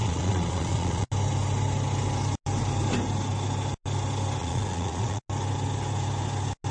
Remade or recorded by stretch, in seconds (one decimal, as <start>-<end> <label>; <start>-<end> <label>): 0.0-1.1 remade; 1.1-4.4 recorded; 4.4-5.2 remade; 5.2-6.7 recorded